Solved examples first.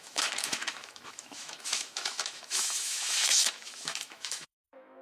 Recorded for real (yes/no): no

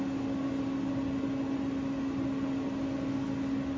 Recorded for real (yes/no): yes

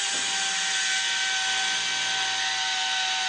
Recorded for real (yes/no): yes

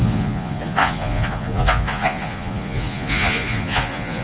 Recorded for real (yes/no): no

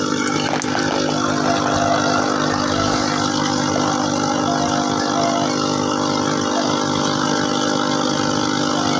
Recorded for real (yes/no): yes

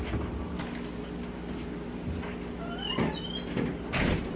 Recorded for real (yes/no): yes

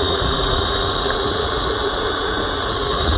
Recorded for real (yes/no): no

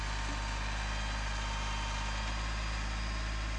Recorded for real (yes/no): yes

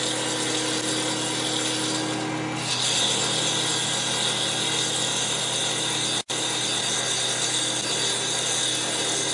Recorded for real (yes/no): yes